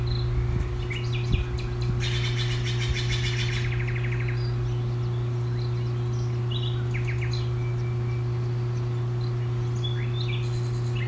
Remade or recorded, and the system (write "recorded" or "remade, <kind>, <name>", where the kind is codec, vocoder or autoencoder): recorded